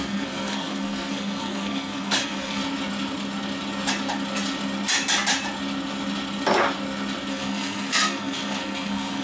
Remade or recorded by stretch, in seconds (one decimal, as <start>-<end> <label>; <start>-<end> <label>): 0.0-2.6 remade; 2.6-7.3 recorded; 7.3-9.2 remade